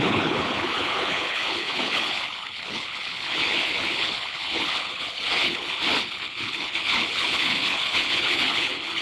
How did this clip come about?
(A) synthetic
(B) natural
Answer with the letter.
A